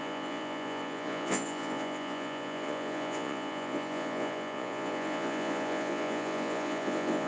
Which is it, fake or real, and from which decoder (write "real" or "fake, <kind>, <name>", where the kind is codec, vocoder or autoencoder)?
fake, vocoder, Vocos